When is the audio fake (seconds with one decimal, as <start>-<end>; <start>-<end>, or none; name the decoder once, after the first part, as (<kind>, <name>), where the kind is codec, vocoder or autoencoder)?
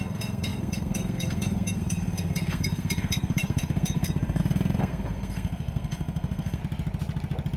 0.0-6.6 (codec, SNAC)